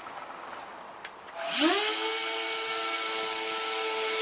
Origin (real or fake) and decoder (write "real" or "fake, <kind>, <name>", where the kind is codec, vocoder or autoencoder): real